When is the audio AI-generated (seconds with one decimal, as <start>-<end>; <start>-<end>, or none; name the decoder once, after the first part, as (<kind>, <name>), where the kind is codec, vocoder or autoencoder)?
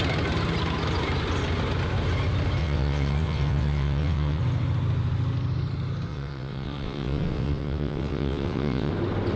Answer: 2.6-4.4 (vocoder, WaveNeXt); 6.1-8.9